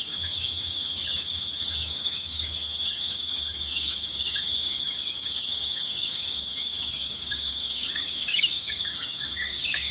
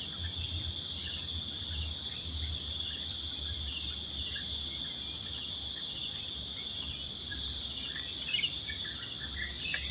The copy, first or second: first